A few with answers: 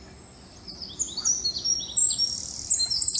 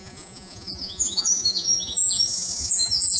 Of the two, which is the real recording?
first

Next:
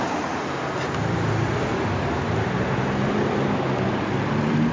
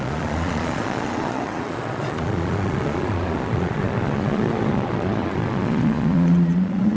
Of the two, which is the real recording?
first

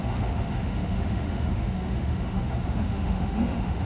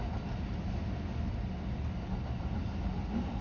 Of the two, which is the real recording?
second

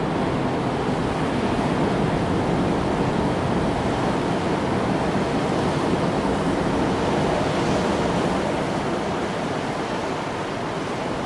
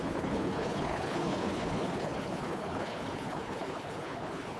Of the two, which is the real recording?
first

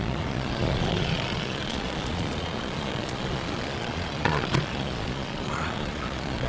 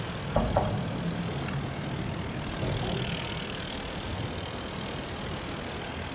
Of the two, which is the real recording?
second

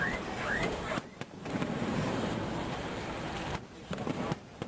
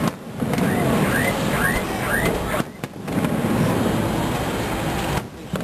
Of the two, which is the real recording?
second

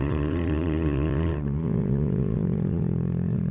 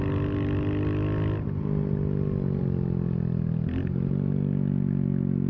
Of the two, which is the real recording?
second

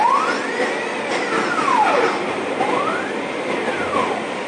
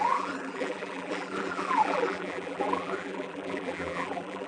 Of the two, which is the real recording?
first